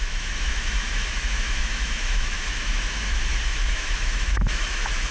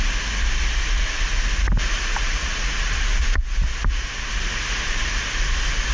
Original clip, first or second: second